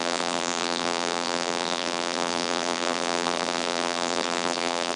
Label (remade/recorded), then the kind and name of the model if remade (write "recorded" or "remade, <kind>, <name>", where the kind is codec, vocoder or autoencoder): remade, vocoder, BigVGAN v2